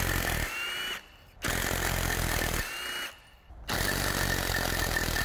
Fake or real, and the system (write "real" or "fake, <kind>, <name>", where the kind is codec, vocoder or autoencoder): real